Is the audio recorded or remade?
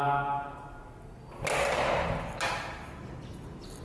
recorded